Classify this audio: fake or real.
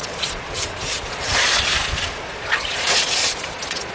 fake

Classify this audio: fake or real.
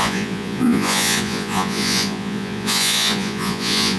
fake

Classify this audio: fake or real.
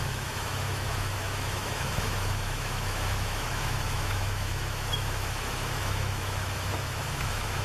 fake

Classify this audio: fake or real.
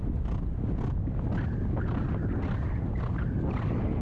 real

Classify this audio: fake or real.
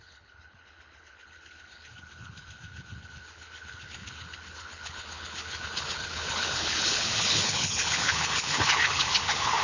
fake